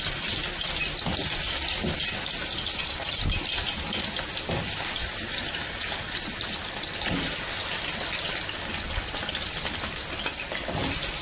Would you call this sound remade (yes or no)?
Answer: no